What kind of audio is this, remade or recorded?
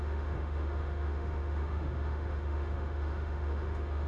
remade